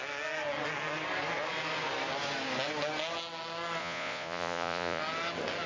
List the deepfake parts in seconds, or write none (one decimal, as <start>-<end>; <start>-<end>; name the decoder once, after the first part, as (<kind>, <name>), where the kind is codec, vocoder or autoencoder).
3.8-5.0 (vocoder, Vocos)